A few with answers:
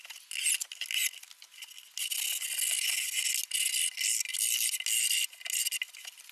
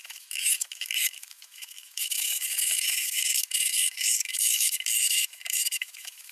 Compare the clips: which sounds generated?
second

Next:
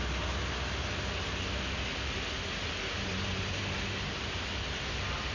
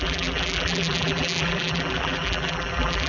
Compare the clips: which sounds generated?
second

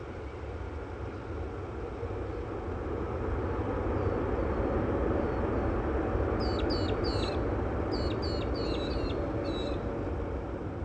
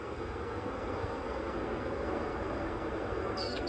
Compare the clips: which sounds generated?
second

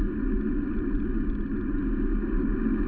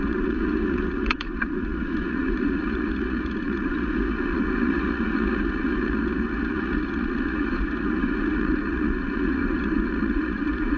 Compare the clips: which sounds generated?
second